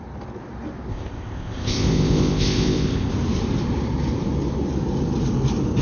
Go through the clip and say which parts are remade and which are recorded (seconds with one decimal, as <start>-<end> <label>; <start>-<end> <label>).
0.0-0.9 recorded; 0.9-3.1 remade; 3.1-5.8 recorded